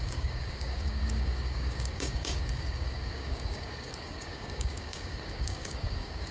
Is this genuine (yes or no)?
no